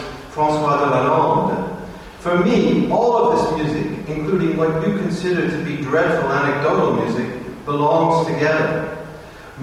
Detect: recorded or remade recorded